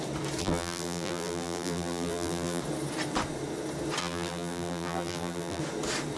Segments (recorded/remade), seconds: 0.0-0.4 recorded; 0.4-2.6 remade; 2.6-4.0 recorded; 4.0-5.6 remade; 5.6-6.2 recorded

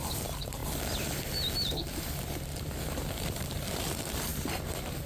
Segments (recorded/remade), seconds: 0.0-5.1 remade

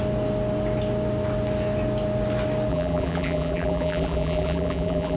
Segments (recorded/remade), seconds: 0.0-2.7 recorded; 2.7-5.2 remade

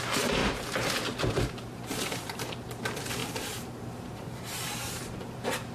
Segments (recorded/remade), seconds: 0.0-0.4 remade; 0.4-1.3 recorded; 1.3-5.7 remade